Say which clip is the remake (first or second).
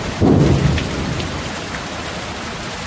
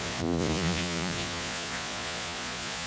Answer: second